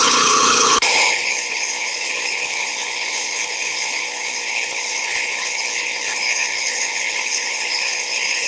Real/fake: fake